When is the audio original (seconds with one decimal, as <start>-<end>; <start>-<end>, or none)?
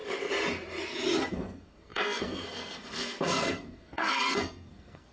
0.0-1.3